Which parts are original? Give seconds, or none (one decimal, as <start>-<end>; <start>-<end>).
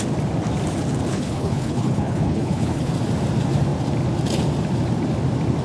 0.0-1.1; 2.9-5.6